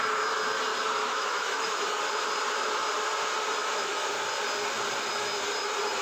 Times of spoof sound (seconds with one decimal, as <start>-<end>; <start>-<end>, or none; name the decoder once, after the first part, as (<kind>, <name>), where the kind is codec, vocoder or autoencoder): 1.0-1.8 (autoencoder, DAC-VAE); 3.6-4.1